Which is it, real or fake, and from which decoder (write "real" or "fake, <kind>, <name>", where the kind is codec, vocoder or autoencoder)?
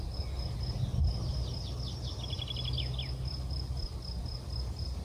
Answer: real